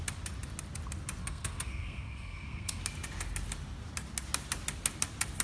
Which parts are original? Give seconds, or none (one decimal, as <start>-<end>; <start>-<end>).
0.0-1.2; 2.8-5.4